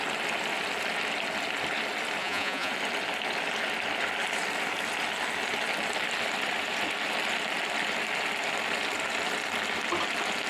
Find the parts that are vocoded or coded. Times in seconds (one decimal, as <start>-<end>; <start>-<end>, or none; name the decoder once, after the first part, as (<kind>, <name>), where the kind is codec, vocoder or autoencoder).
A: 2.2-2.7 (vocoder, Vocos)